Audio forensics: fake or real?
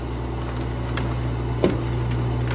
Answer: real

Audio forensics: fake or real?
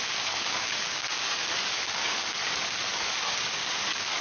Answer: fake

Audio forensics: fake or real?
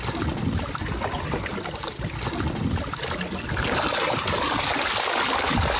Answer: real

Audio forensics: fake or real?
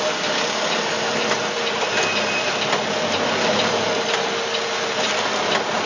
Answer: real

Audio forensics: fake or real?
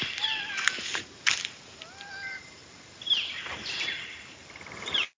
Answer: real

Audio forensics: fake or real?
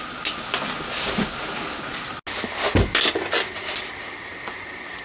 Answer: real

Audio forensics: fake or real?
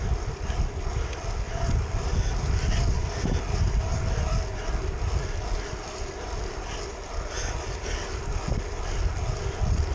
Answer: real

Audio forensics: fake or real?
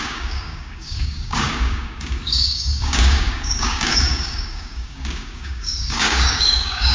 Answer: fake